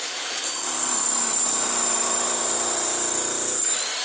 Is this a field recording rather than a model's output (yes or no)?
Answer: yes